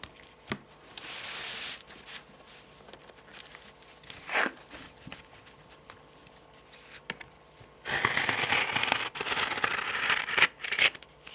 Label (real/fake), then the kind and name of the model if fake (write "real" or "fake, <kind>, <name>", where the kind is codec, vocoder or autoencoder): real